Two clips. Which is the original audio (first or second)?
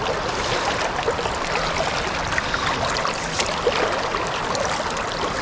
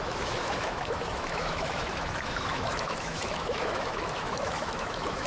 first